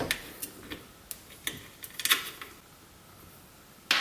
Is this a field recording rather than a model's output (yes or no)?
yes